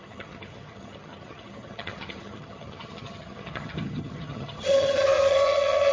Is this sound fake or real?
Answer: fake